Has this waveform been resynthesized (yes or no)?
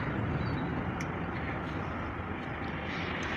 no